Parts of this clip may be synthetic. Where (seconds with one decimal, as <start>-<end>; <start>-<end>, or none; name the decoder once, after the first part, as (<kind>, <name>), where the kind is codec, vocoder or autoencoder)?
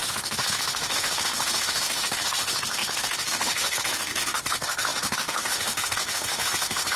0.0-7.0 (autoencoder, DAC-VAE)